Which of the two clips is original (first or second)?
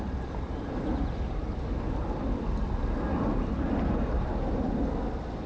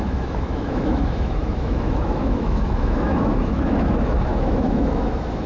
first